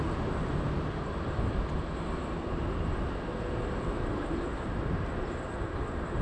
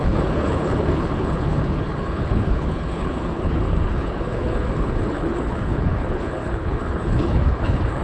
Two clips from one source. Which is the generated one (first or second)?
second